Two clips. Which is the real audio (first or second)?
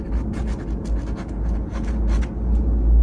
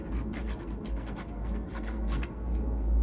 first